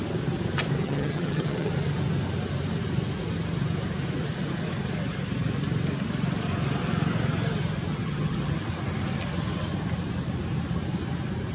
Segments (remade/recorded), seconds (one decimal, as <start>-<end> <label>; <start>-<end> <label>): 0.0-0.8 recorded; 0.8-1.7 remade; 1.7-7.9 recorded; 7.9-8.5 remade; 8.5-11.5 recorded